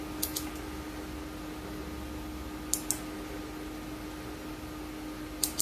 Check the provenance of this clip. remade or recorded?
recorded